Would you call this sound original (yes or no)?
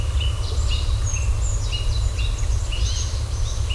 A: yes